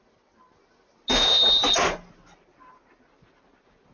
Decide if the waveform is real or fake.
real